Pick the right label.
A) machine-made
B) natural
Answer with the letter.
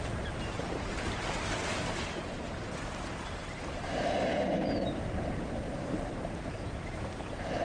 A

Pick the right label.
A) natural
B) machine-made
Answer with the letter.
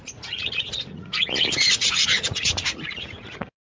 B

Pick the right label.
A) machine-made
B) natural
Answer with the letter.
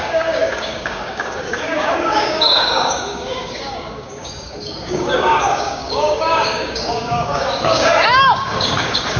A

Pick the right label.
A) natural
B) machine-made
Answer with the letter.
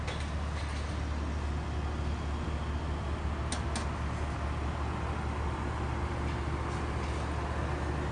A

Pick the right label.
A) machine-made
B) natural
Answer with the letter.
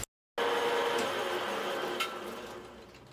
B